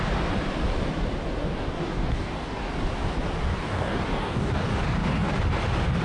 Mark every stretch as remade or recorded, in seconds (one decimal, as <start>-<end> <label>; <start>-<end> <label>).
0.0-1.4 recorded; 1.4-2.7 remade; 2.7-3.5 recorded; 3.5-5.4 remade; 5.4-6.0 recorded